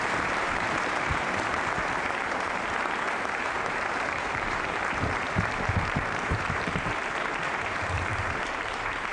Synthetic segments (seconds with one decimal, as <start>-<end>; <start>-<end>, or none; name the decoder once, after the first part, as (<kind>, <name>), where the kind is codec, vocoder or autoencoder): 0.0-8.1 (vocoder, BigVGAN v2); 8.7-9.1